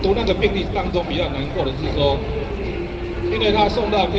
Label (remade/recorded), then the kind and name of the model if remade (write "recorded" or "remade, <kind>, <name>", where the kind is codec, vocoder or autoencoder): recorded